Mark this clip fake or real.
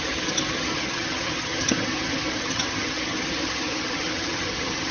fake